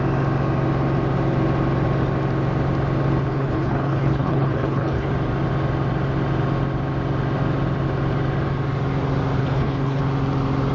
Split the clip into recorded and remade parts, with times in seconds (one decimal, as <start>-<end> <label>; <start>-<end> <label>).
0.0-3.3 recorded; 3.3-5.1 remade; 5.1-9.4 recorded; 9.4-10.0 remade; 10.0-10.7 recorded